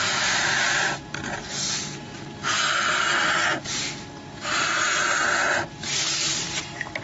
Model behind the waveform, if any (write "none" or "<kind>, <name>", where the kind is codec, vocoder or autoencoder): none